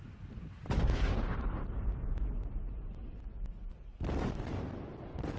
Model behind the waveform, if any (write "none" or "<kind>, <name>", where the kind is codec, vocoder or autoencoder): none